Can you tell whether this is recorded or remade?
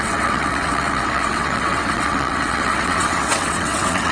remade